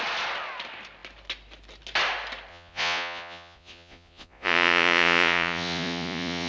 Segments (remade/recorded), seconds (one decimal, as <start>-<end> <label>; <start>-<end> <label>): 0.0-2.5 recorded; 2.5-6.5 remade